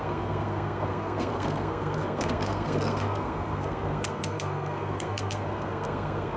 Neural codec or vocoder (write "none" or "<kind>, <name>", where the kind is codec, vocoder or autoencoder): codec, SNAC